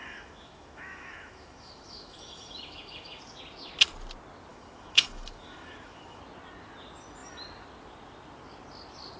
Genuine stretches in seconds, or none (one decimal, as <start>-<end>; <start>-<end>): 3.2-4.5; 6.2-9.2